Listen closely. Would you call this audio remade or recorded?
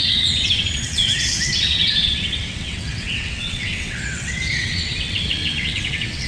remade